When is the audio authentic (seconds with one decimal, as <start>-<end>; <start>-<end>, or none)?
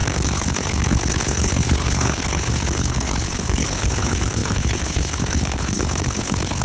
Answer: none